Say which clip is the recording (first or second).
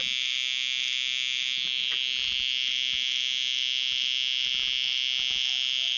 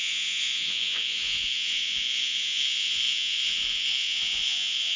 first